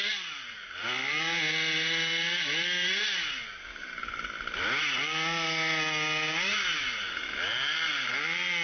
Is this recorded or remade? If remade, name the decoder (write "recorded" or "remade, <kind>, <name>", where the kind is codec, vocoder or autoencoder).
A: recorded